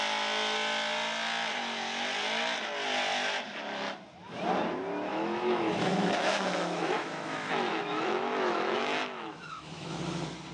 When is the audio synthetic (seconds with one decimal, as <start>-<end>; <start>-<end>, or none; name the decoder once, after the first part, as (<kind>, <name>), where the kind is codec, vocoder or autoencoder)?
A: 5.1-10.0 (autoencoder, DAC-VAE)